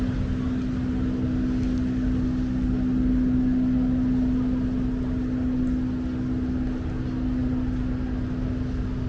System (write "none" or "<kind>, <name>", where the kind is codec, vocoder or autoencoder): none